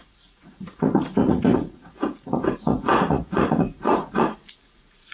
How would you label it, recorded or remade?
remade